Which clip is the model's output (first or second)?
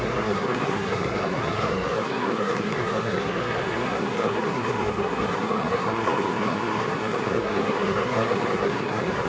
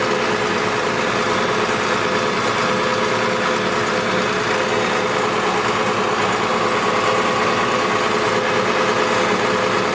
first